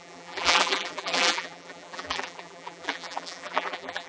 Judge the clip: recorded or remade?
remade